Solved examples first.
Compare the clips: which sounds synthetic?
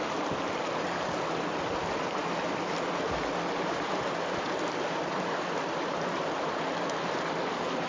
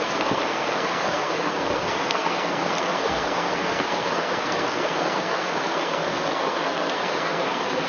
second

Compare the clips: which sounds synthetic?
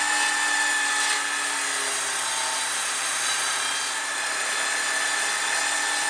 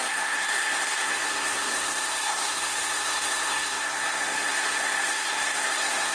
second